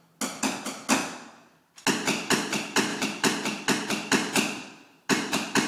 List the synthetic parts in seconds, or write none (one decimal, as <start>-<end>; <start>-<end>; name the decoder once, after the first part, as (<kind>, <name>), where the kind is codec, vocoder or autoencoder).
none